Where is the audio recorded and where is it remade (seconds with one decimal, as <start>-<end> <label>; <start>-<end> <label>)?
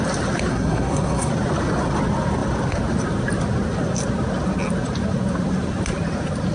0.0-0.5 recorded; 0.5-1.3 remade; 1.3-6.5 recorded